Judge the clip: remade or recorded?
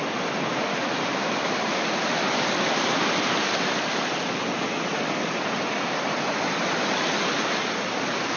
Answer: recorded